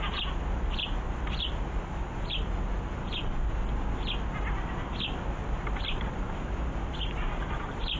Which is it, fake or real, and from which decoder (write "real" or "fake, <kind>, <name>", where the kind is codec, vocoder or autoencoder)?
real